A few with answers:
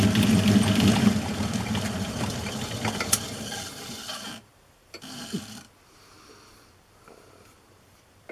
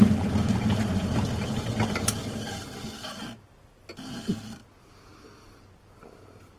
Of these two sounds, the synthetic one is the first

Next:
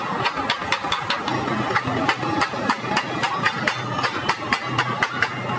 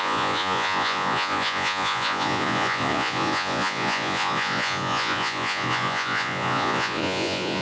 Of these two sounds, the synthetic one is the second